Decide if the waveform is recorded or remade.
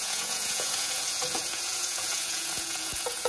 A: remade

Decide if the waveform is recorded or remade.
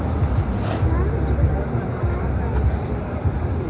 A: recorded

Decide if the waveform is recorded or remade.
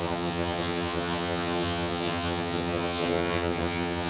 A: remade